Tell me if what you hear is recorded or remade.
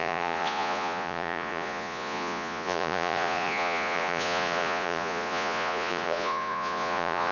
remade